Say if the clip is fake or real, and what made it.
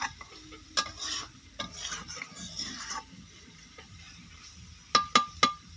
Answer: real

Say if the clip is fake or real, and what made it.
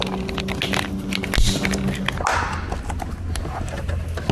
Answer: real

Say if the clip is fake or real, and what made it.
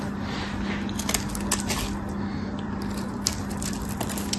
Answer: real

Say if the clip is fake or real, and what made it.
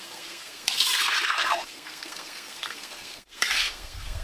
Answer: fake, codec, SNAC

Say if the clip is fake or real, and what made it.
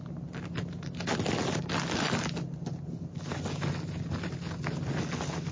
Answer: real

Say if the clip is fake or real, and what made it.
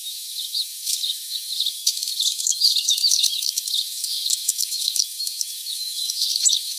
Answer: fake, autoencoder, DAC-VAE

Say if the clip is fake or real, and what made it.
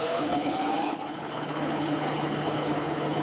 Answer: fake, codec, HILCodec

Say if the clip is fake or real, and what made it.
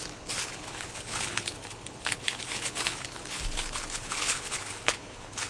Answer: fake, codec, HILCodec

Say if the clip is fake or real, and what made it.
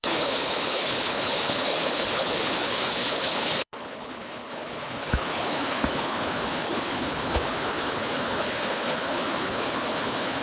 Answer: fake, codec, HILCodec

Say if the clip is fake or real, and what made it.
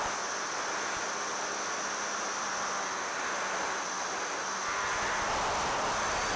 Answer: real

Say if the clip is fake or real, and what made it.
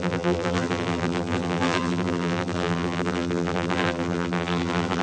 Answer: fake, vocoder, BigVGAN v2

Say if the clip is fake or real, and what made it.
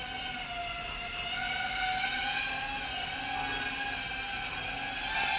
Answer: real